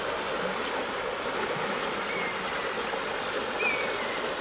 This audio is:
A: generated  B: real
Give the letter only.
B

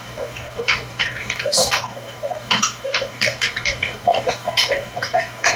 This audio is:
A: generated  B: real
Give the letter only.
A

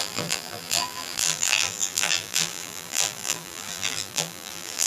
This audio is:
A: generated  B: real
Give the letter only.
A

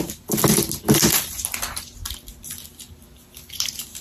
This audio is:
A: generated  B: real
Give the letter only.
B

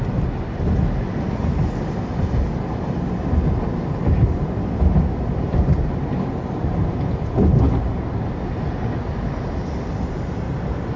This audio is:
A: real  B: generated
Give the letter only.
A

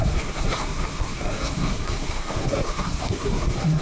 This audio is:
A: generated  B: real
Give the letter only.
A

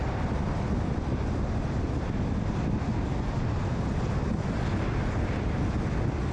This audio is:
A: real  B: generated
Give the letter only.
A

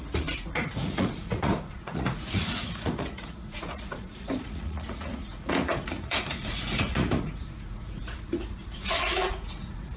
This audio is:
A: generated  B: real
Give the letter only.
A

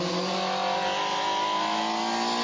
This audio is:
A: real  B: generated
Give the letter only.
A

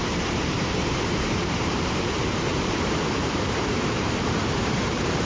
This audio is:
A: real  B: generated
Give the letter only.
B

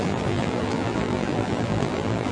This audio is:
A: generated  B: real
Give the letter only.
A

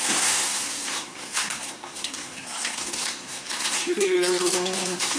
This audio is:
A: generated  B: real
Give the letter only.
A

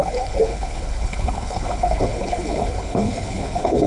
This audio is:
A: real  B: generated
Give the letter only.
B